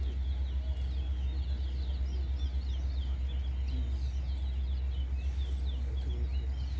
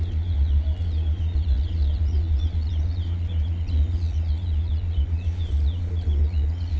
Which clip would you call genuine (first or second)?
first